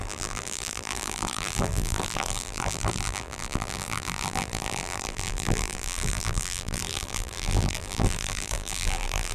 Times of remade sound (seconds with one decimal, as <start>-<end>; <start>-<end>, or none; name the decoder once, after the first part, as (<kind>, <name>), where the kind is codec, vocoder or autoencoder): 0.0-9.3 (vocoder, BigVGAN v2)